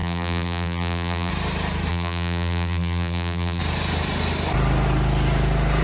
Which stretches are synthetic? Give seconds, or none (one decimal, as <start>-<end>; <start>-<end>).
0.0-1.3; 1.9-3.6